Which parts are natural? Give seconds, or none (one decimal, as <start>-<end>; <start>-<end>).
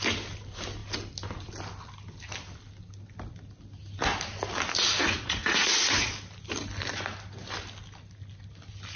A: 0.0-5.0; 6.1-9.0